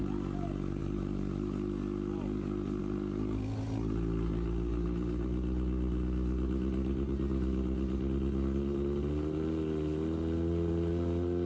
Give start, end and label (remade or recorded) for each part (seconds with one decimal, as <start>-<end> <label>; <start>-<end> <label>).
0.0-11.5 recorded